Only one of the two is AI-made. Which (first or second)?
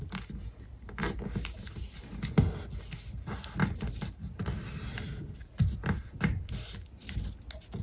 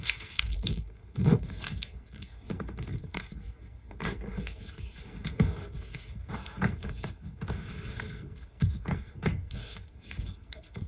second